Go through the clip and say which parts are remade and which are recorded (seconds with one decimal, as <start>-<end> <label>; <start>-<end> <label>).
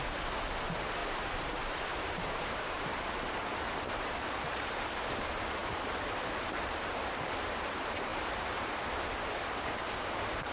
0.0-1.0 recorded; 1.0-4.7 remade; 4.7-5.6 recorded; 5.6-7.1 remade; 7.1-10.5 recorded